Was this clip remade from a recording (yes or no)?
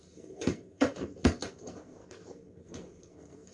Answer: yes